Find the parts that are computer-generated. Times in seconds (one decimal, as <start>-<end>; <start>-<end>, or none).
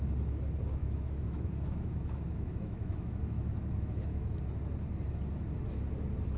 0.8-4.4